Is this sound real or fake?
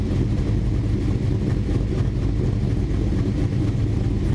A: real